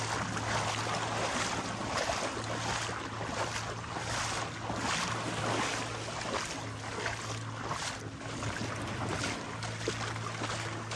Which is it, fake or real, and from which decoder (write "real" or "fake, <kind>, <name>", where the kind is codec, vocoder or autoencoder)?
real